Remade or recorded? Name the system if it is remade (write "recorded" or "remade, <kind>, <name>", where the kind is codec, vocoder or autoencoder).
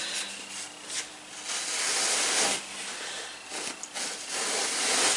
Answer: recorded